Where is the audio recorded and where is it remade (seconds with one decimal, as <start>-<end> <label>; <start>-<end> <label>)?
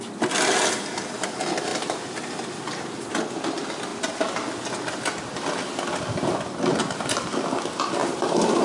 0.0-1.7 recorded; 1.7-3.1 remade; 3.1-8.0 recorded; 8.0-8.6 remade